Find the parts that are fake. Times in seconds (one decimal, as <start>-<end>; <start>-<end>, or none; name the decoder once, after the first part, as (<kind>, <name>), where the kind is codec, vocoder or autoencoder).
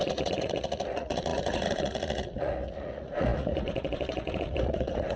0.0-5.2 (vocoder, Vocos)